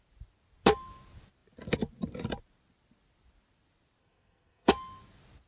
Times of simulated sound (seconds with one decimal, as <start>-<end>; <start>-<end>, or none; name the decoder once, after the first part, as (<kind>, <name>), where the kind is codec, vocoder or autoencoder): 4.0-4.7 (codec, SNAC)

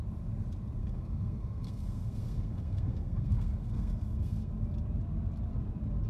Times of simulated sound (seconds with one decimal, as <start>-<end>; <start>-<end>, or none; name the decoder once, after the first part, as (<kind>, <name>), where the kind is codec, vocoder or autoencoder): 0.8-4.5 (codec, SNAC)

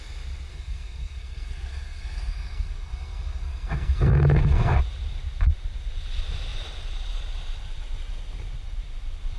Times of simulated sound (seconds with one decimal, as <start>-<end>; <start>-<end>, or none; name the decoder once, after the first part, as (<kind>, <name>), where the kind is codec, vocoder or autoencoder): 0.5-4.8 (codec, SNAC)

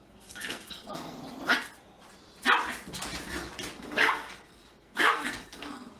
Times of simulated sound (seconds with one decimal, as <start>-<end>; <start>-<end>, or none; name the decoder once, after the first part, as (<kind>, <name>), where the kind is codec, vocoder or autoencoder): 0.0-1.2 (codec, SNAC); 3.8-6.0

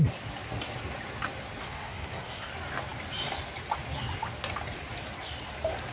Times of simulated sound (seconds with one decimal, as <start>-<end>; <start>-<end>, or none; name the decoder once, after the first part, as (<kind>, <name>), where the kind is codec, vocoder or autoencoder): 1.6-2.5 (codec, SNAC)

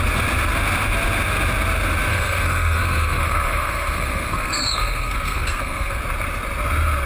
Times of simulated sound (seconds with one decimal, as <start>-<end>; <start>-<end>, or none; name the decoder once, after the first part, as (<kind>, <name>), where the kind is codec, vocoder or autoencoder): 2.1-6.0 (codec, SNAC)

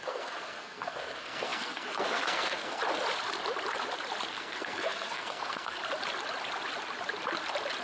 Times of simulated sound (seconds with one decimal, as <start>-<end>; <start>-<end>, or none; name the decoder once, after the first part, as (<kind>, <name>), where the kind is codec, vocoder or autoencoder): 0.0-2.8 (codec, SNAC); 4.3-5.8